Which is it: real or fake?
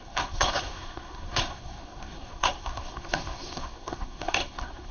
fake